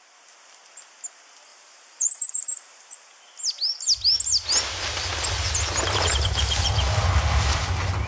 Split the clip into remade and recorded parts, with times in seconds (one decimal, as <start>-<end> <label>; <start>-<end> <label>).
0.0-1.5 recorded; 1.5-3.1 remade; 3.1-6.1 recorded; 6.1-6.7 remade; 6.7-8.1 recorded